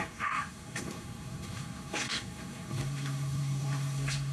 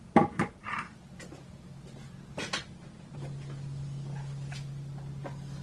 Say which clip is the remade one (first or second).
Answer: first